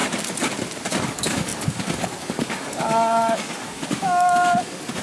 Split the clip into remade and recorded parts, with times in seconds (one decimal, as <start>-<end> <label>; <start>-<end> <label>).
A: 0.0-1.0 recorded; 1.0-5.0 remade